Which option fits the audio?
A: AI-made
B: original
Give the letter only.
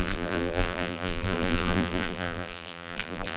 A